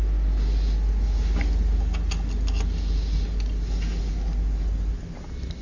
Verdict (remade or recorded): recorded